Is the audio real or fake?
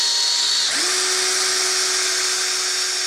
real